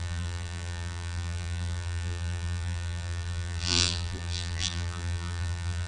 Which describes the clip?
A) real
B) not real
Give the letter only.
B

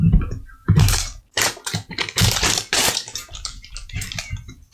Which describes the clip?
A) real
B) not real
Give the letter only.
B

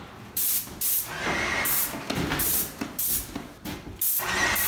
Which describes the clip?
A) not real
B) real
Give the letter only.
B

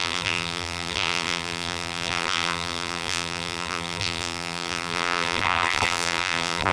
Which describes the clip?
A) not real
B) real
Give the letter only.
A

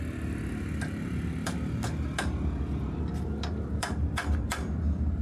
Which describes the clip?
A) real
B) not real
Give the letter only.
A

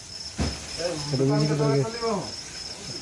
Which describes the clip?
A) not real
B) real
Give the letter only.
B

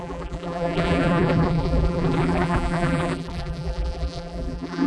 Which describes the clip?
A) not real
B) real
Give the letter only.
A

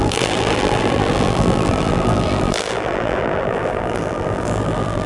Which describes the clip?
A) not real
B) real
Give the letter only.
A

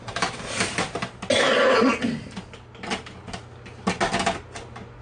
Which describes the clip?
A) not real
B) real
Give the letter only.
B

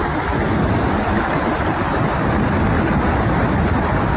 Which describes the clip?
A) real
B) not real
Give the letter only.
A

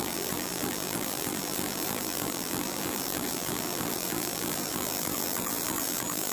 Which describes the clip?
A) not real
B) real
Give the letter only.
A